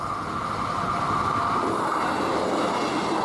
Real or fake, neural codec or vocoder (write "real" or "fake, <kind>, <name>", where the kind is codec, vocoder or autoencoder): real